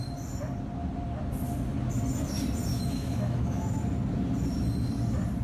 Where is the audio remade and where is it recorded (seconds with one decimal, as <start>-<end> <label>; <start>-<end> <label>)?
0.0-2.7 recorded; 2.7-3.8 remade; 3.8-5.4 recorded

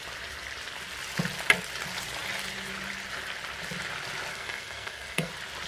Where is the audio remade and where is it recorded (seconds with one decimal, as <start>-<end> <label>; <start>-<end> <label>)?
0.0-4.3 recorded; 4.3-5.3 remade; 5.3-5.7 recorded